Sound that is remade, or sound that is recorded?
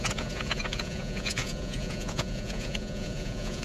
remade